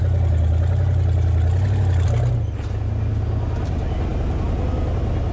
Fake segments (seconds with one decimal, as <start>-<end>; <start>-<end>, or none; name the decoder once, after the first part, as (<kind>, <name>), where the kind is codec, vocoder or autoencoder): none